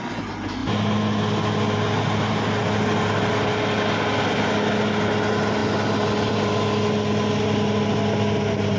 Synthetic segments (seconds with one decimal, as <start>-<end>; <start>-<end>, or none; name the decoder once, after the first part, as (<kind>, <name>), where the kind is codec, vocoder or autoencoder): none

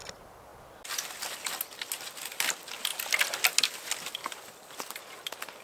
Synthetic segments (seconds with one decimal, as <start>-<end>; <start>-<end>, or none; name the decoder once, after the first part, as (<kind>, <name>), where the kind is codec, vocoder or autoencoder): none

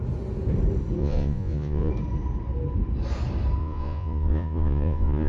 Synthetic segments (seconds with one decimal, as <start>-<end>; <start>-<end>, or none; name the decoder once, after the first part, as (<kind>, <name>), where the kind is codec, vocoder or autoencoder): 1.0-1.9 (vocoder, Vocos); 3.6-5.3